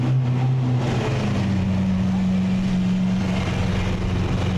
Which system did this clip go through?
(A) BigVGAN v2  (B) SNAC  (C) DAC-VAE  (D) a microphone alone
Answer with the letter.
D